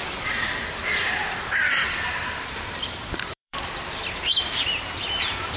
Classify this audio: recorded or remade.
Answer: remade